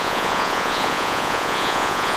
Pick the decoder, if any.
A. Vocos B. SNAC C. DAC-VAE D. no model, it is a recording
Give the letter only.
A